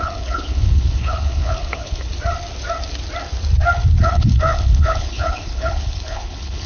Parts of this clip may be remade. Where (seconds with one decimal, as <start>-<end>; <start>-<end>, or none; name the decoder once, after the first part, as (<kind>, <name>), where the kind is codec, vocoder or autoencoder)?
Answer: 0.0-2.1 (codec, HILCodec); 4.0-6.7